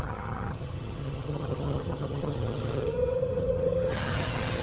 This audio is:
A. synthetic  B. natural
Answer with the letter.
A